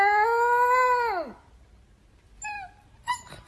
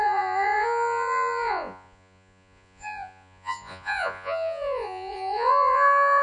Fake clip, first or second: second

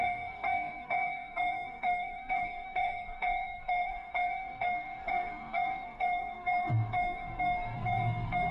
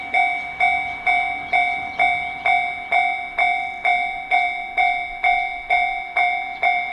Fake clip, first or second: first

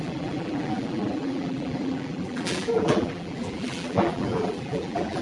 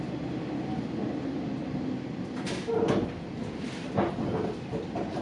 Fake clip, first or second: first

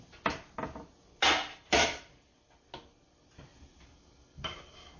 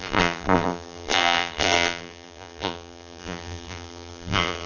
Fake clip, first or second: second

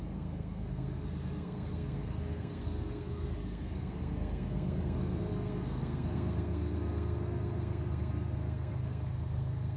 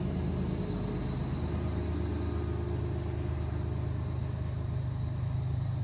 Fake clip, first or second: first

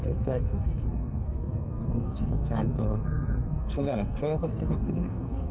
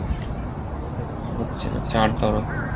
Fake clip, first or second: first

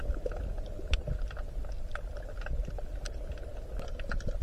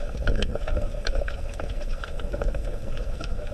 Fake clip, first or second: second